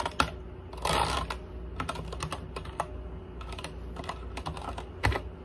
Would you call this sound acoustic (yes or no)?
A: yes